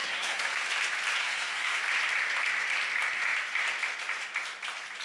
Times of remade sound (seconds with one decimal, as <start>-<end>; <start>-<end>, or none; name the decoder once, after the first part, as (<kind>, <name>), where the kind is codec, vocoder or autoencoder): 0.0-0.6 (codec, SNAC); 1.2-1.8